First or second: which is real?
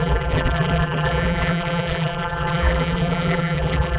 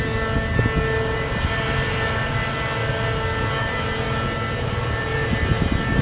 second